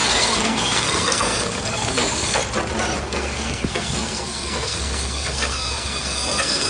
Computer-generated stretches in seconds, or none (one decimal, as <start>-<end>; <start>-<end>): 0.0-2.4; 3.0-6.7